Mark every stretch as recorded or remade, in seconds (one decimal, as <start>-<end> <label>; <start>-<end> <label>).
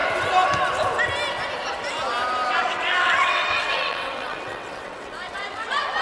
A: 0.0-2.5 recorded; 2.5-6.0 remade